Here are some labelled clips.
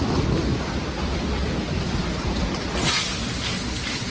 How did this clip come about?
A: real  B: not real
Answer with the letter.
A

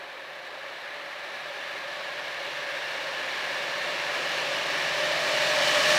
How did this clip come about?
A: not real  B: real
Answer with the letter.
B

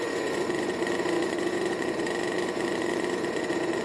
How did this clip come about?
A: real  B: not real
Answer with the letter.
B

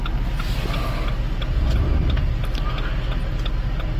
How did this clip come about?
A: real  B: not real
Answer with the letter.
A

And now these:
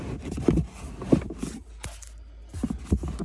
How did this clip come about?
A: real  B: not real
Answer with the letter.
A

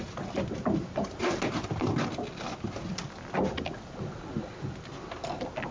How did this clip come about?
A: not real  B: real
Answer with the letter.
B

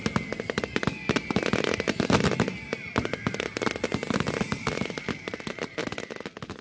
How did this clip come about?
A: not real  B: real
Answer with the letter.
B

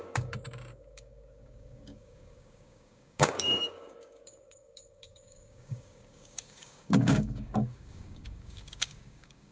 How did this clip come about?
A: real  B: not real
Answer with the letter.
B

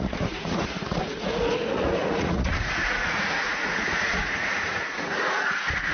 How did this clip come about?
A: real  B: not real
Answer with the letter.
B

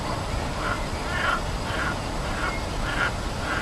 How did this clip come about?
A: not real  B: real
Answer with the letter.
B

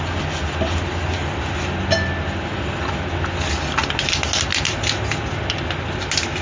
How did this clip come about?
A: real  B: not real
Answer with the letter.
A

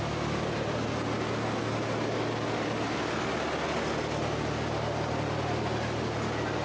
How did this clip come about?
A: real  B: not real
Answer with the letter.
A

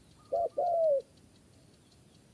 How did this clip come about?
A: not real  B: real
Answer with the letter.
B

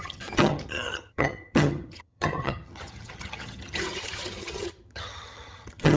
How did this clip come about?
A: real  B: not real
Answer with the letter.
B